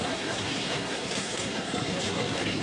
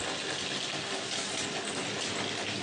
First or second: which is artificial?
first